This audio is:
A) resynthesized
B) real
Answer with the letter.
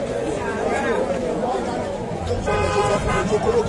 A